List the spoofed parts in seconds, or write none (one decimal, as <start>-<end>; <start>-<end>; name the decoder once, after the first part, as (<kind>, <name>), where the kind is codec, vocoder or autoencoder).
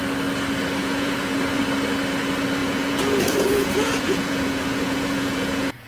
0.8-1.6 (vocoder, Vocos); 2.6-5.9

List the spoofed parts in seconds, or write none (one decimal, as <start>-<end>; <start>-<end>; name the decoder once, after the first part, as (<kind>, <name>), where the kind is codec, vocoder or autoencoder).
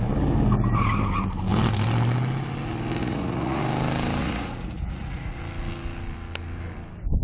3.0-3.6 (vocoder, Vocos); 4.2-5.4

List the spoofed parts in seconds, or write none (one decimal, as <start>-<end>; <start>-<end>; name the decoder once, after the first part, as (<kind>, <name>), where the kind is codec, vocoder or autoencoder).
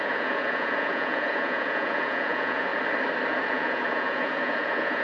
0.0-2.7 (vocoder, Vocos); 3.3-5.0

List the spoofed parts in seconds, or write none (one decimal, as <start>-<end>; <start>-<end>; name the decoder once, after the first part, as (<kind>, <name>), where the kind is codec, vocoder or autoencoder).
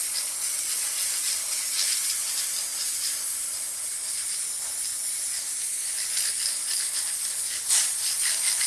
none